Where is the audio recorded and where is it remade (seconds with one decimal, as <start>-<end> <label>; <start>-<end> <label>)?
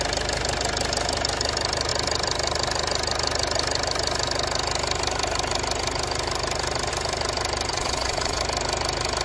0.0-7.7 recorded; 7.7-8.4 remade; 8.4-9.2 recorded